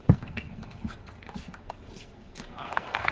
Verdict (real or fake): fake